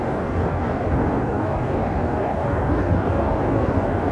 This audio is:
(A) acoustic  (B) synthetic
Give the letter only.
B